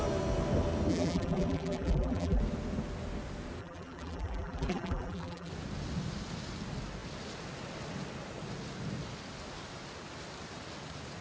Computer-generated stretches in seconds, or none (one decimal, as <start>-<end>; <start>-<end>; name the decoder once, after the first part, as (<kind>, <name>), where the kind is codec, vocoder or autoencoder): 0.9-2.4 (vocoder, BigVGAN v2); 3.6-5.5